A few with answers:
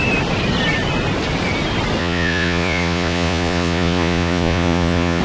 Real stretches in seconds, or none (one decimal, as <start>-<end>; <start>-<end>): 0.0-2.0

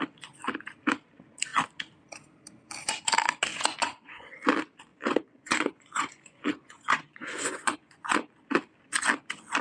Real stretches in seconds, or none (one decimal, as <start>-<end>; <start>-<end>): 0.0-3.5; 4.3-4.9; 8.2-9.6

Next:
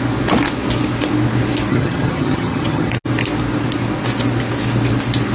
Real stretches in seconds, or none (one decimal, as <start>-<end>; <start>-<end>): 0.0-1.7; 2.9-5.3

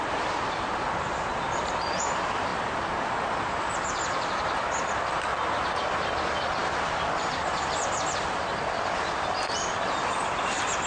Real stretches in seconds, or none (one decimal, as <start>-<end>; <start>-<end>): 2.5-3.7; 5.3-5.9

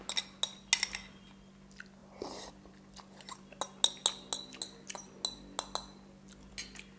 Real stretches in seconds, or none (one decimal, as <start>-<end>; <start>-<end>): 0.0-2.0; 2.7-7.0

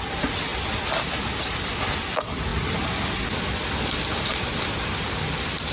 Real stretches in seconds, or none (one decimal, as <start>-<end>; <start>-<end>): 0.0-5.7

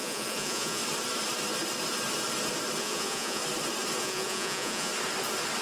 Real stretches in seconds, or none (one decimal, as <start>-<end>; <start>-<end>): 0.8-2.8; 3.4-4.0; 4.9-5.6

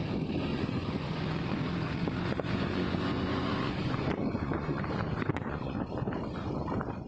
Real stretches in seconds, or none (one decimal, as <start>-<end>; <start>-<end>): 0.0-0.5; 4.8-5.3; 5.9-7.1